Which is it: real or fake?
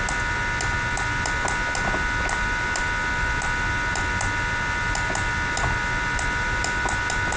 real